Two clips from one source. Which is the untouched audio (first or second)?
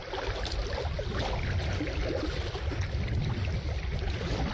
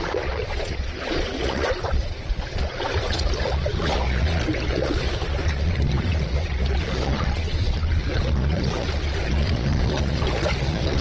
first